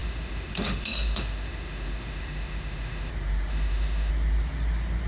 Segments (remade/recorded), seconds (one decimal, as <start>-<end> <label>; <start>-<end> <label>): 0.0-3.1 remade; 3.1-3.5 recorded; 3.5-4.1 remade; 4.1-5.1 recorded